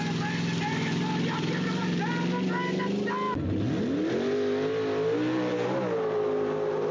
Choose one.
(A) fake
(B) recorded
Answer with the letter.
B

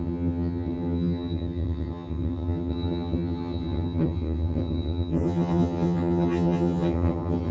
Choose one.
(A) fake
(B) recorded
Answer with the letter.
A